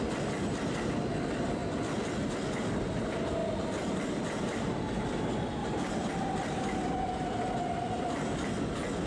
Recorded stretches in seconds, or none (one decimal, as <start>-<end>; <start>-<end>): 0.0-3.4; 4.6-5.6; 7.5-9.1